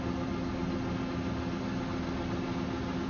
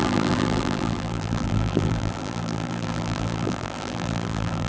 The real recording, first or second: first